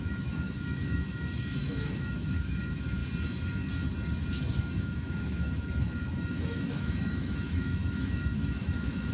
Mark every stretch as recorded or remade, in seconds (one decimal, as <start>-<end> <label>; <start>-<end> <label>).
0.0-3.0 remade; 3.0-4.8 recorded; 4.8-9.1 remade